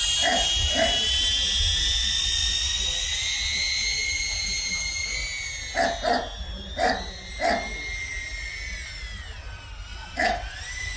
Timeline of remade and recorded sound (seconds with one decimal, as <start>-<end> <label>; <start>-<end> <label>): 0.0-11.0 recorded